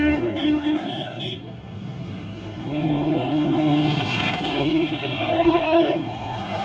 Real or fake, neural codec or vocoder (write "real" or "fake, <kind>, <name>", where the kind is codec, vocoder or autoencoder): fake, codec, SNAC